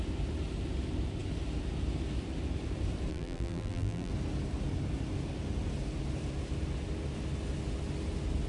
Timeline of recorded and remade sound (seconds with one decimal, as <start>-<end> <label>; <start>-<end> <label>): 0.0-3.1 recorded; 3.1-4.1 remade; 4.1-8.5 recorded